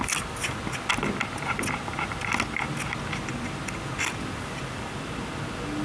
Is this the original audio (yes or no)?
yes